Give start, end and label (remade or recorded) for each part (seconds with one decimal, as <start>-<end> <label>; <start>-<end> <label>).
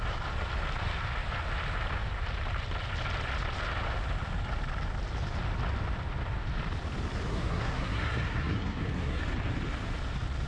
0.0-7.3 recorded; 7.3-9.2 remade; 9.2-10.5 recorded